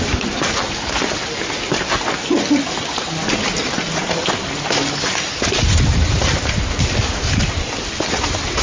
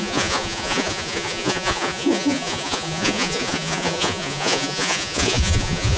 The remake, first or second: second